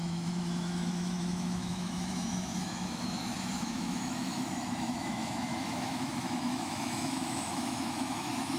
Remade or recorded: remade